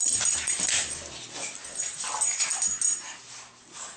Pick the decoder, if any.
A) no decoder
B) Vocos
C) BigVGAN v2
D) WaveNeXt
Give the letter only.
A